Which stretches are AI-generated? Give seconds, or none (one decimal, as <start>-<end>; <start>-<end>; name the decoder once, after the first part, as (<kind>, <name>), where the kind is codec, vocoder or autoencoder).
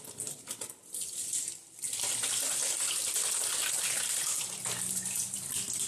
none